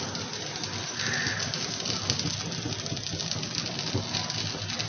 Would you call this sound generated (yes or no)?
no